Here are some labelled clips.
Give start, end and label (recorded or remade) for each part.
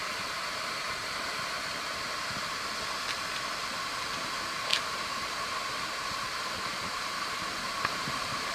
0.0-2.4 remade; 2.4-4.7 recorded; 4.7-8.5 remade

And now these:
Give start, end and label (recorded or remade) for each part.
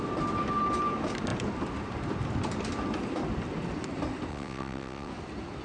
0.0-4.3 recorded; 4.3-5.1 remade; 5.1-5.6 recorded